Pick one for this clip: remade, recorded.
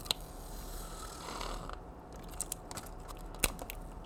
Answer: recorded